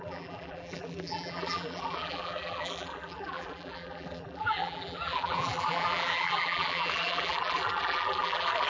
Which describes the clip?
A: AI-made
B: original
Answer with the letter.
A